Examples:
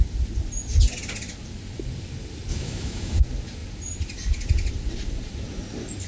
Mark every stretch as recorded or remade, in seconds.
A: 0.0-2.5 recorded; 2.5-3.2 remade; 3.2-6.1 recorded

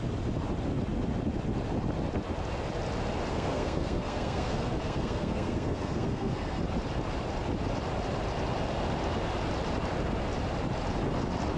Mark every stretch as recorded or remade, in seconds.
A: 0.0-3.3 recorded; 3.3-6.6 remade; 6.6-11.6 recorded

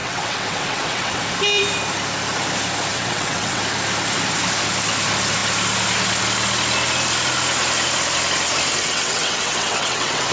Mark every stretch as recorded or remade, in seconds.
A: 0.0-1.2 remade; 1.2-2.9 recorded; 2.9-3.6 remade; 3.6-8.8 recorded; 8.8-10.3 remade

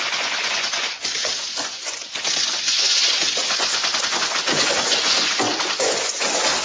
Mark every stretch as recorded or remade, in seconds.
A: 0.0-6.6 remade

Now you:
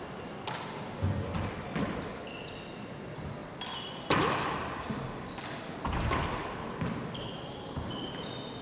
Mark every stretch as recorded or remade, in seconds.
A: 0.0-8.6 recorded

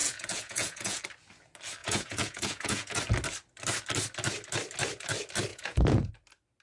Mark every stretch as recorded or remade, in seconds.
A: 0.0-1.0 remade; 1.0-1.8 recorded; 1.8-3.0 remade; 3.0-5.5 recorded; 5.5-6.1 remade; 6.1-6.6 recorded

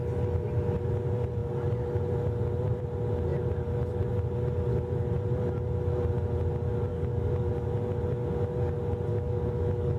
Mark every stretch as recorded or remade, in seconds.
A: 0.0-6.9 recorded; 6.9-7.5 remade; 7.5-9.1 recorded; 9.1-10.0 remade

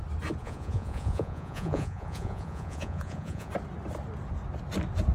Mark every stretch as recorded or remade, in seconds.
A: 0.0-0.4 recorded; 0.4-3.5 remade; 3.5-5.1 recorded